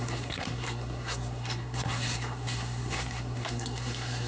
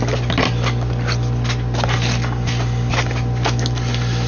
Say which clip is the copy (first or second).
first